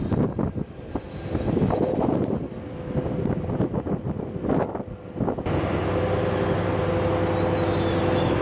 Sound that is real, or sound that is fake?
real